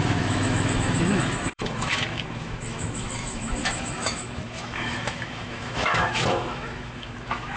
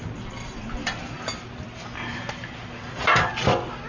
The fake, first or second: first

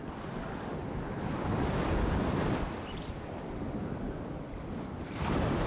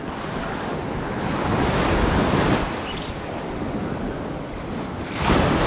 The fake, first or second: first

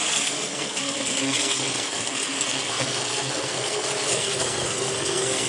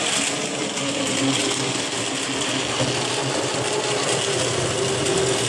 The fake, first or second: first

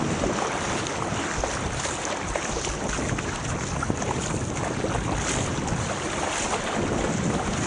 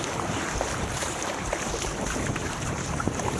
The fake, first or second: second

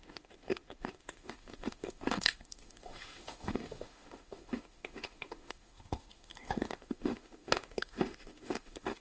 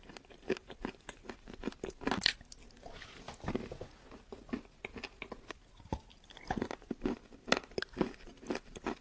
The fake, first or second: first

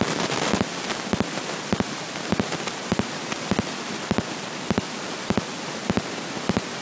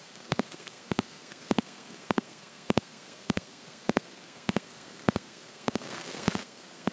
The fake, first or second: second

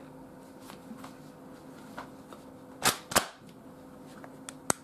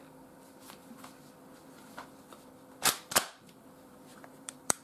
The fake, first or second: second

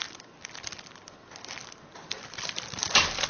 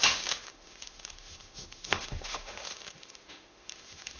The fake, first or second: second